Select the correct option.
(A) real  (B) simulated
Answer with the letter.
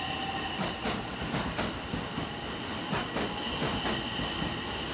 A